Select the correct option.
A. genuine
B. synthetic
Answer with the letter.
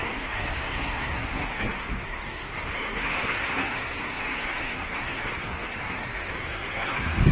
B